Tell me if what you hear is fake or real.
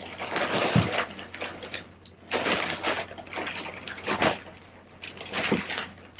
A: real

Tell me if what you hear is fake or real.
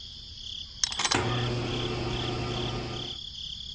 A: real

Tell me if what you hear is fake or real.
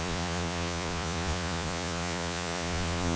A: fake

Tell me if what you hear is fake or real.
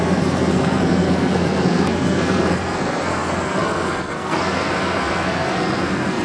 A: fake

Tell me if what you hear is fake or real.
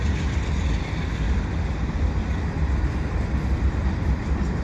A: fake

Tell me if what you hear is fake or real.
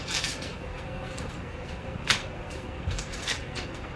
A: fake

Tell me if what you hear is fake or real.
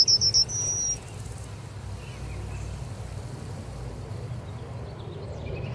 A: real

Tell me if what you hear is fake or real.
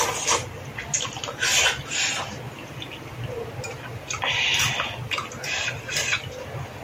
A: real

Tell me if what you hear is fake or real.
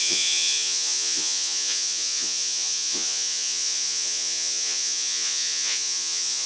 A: fake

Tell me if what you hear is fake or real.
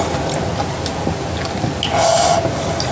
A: real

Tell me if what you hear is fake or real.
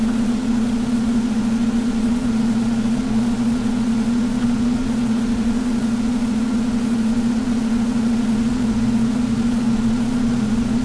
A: fake